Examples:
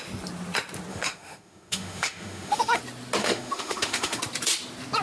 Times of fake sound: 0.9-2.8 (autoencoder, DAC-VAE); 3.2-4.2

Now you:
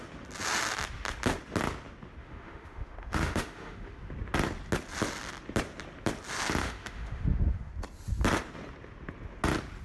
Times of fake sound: 2.2-4.1 (autoencoder, DAC-VAE); 6.6-7.7

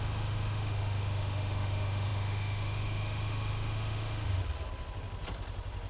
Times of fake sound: 0.0-4.4 (autoencoder, DAC-VAE)

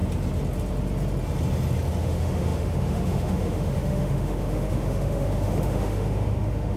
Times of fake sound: 2.0-6.8 (autoencoder, DAC-VAE)

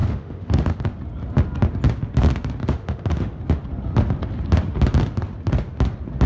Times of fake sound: 0.0-0.8 (autoencoder, DAC-VAE); 2.6-3.4

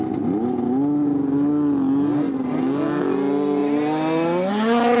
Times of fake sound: none

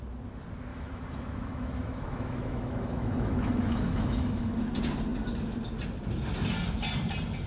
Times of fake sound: 0.7-4.6 (autoencoder, DAC-VAE)

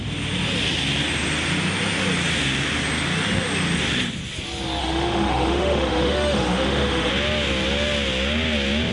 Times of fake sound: 4.8-7.1 (autoencoder, DAC-VAE)